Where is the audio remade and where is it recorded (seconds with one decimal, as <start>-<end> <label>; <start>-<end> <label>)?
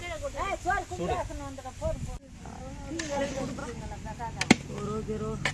0.0-5.5 recorded